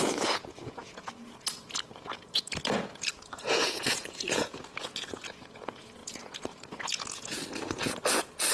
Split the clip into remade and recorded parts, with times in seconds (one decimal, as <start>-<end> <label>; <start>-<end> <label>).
0.0-8.5 remade